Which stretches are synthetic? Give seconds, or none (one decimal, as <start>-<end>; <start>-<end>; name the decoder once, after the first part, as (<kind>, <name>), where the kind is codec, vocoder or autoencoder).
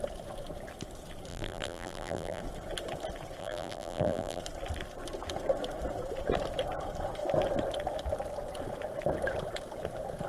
1.3-2.4 (vocoder, BigVGAN v2); 3.4-4.4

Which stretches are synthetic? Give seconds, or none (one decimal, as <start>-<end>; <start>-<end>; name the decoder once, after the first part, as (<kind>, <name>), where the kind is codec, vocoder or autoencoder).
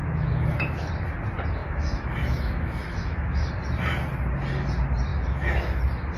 0.0-0.9 (autoencoder, DAC-VAE); 1.6-3.5; 5.1-5.8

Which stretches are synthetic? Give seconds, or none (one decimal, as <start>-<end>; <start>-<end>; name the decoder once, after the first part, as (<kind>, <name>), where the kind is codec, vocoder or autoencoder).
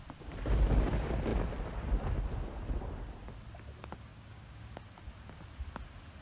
4.1-4.8 (codec, DAC)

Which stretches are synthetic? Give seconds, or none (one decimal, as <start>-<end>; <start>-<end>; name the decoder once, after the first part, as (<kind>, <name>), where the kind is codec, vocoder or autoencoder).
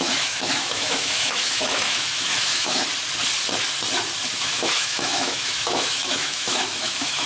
0.0-2.9 (autoencoder, DAC-VAE); 4.4-7.3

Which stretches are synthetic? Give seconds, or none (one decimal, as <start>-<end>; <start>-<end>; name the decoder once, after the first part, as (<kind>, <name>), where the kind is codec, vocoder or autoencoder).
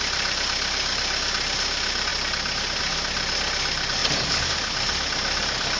none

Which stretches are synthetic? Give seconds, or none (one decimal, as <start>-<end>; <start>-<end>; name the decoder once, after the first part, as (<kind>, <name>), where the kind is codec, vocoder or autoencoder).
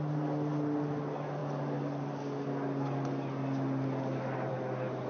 none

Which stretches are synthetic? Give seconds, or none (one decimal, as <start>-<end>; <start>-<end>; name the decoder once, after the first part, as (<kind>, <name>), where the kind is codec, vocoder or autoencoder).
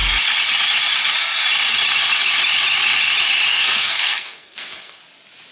3.5-5.0 (codec, SNAC)